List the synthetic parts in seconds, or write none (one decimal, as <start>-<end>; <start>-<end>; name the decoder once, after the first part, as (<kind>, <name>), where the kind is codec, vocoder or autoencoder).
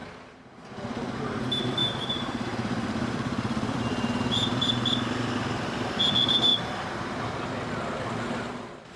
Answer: 1.8-6.0 (vocoder, BigVGAN v2)